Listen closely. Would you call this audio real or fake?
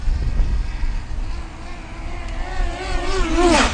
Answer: real